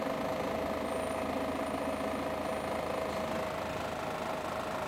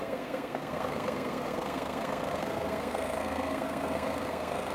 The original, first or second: first